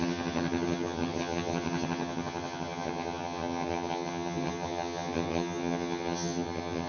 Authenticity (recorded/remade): remade